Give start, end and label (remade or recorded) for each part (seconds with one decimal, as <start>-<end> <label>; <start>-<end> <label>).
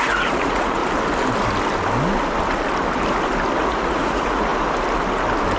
0.0-0.8 remade; 0.8-3.6 recorded; 3.6-4.5 remade; 4.5-5.6 recorded